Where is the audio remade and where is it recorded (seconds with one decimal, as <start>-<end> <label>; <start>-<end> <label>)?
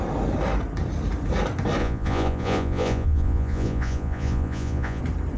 0.0-1.8 recorded; 1.8-5.0 remade; 5.0-5.4 recorded